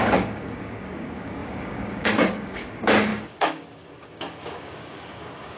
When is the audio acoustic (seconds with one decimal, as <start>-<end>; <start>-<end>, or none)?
none

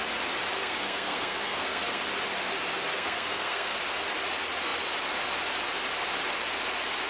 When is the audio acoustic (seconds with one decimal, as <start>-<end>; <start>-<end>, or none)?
0.0-0.6; 2.0-2.9; 3.8-7.1

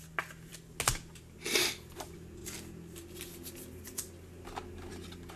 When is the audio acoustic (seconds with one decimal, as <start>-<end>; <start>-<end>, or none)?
0.0-5.4

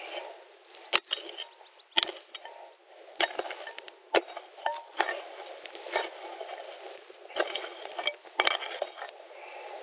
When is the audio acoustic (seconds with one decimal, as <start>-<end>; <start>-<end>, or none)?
0.0-2.8; 6.3-9.8

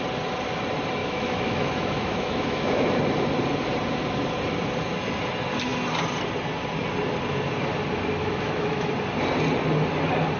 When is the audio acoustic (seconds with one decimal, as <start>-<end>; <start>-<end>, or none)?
0.0-1.0; 3.0-8.2; 8.9-10.4

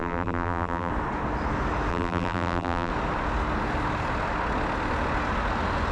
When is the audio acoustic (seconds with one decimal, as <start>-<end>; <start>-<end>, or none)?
0.9-1.9; 2.9-5.9

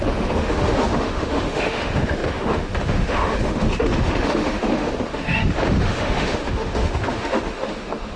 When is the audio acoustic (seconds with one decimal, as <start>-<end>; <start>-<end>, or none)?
none